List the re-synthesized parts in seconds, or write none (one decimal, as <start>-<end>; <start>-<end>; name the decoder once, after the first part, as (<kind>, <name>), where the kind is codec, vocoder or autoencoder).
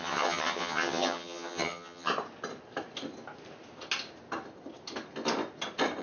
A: 0.0-2.1 (vocoder, HiFi-GAN)